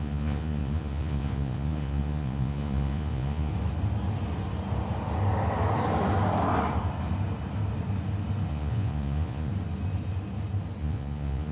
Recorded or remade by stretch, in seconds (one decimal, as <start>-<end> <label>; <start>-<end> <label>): 0.0-3.5 remade; 3.5-8.5 recorded; 8.5-9.5 remade; 9.5-10.8 recorded; 10.8-11.5 remade

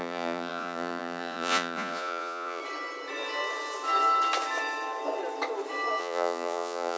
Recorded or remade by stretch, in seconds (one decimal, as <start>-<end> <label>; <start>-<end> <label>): 0.0-2.6 remade; 2.6-6.0 recorded; 6.0-7.0 remade

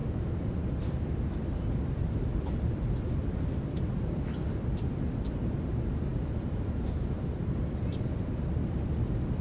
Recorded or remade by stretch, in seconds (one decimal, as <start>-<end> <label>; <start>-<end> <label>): 0.0-9.4 remade

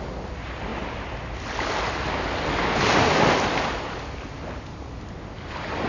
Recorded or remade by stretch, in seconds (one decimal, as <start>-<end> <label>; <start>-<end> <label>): 0.0-5.9 recorded

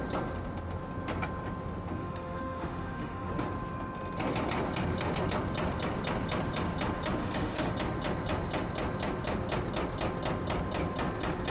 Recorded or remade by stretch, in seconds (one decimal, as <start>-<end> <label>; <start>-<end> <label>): 0.0-2.0 recorded; 2.0-3.3 remade; 3.3-7.2 recorded; 7.2-7.7 remade; 7.7-11.5 recorded